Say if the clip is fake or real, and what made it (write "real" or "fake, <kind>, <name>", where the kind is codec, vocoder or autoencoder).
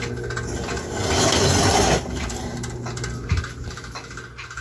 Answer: real